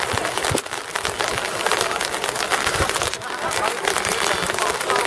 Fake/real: real